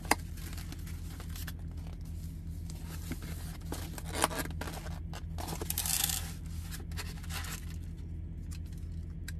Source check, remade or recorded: recorded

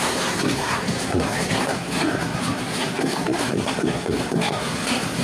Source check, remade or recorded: remade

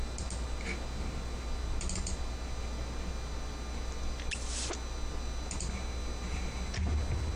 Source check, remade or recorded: recorded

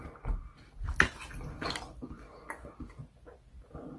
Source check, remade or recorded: recorded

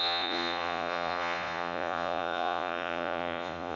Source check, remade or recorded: remade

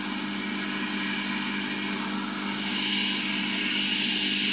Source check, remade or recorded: recorded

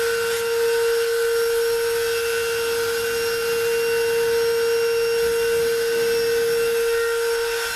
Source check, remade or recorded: recorded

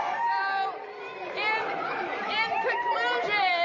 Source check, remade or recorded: remade